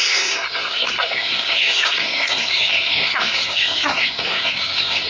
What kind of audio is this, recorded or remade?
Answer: remade